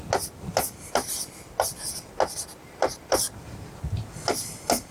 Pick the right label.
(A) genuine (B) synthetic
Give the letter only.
A